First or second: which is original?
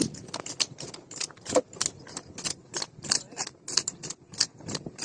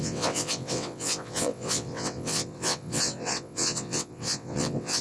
first